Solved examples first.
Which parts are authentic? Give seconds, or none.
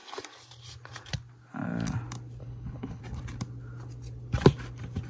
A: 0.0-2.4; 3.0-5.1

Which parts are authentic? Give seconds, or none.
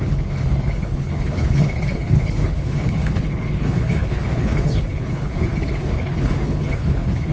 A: none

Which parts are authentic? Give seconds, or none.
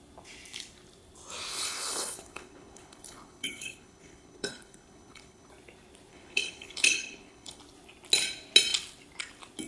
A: 0.0-1.5; 5.5-6.1; 7.6-9.7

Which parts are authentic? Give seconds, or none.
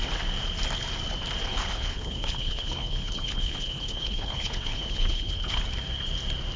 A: 0.0-1.6; 5.6-6.6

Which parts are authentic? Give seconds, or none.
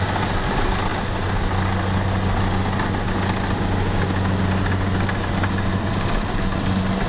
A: 0.0-7.1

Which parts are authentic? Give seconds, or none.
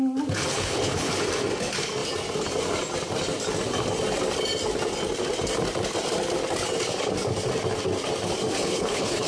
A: 0.0-0.5; 1.1-8.6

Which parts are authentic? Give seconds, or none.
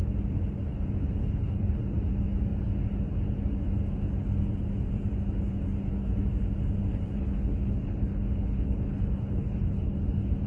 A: 0.0-1.2; 1.8-6.9; 10.0-10.5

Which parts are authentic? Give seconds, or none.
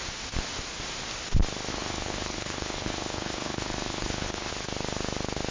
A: 0.0-1.7; 4.5-5.5